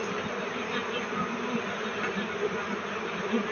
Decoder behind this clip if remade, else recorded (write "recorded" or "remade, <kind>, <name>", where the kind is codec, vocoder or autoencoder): recorded